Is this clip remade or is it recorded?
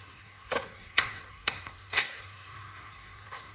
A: remade